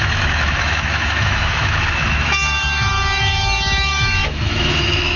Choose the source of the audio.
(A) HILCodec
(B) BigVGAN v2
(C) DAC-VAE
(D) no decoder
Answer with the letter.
C